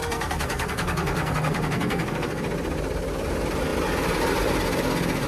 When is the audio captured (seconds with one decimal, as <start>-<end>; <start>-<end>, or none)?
2.4-5.3